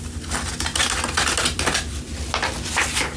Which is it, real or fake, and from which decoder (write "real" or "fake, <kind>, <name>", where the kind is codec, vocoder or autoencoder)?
real